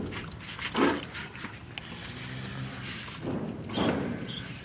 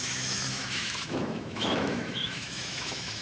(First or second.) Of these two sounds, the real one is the first